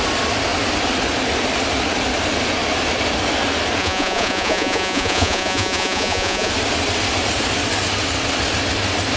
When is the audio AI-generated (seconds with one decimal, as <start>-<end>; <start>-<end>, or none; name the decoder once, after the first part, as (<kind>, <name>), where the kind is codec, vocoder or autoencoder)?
3.8-6.5 (vocoder, Vocos)